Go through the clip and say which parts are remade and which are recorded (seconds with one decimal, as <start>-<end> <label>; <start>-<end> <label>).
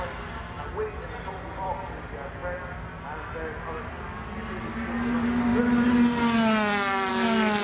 0.0-7.6 recorded